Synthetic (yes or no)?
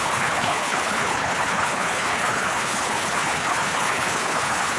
yes